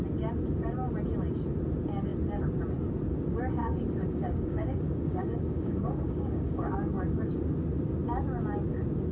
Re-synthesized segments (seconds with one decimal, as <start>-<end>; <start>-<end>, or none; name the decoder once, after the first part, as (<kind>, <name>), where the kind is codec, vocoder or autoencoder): 3.6-7.4 (codec, DAC)